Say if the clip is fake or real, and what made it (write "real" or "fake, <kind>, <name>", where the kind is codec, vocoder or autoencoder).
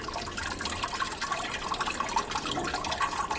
real